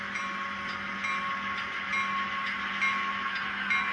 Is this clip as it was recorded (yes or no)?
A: yes